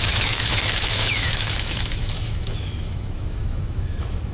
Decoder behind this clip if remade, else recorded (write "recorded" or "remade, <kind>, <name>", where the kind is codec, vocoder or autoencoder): remade, autoencoder, DAC-VAE